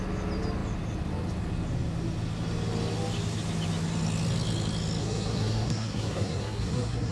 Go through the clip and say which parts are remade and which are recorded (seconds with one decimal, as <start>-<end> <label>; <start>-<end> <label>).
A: 0.0-5.0 recorded; 5.0-7.1 remade